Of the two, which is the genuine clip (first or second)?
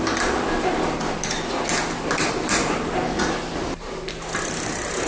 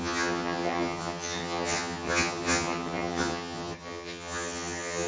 first